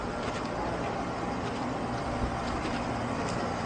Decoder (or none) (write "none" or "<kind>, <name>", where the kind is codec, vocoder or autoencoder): none